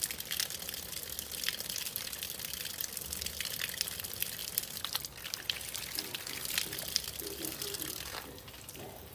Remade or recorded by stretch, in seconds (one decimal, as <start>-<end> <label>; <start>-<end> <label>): 0.0-9.1 recorded